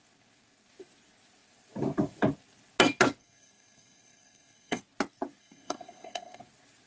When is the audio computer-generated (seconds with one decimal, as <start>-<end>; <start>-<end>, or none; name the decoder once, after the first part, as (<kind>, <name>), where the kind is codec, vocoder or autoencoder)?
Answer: 3.2-4.8 (codec, SNAC); 5.4-6.4